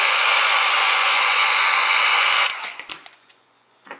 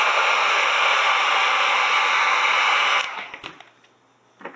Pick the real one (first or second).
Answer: second